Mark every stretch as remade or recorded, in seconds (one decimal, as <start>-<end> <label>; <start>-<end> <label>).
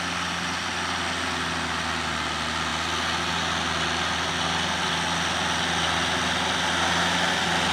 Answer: 0.0-7.7 recorded